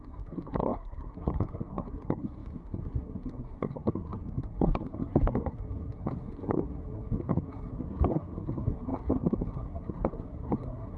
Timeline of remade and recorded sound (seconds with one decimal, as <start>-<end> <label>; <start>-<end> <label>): 0.0-11.0 remade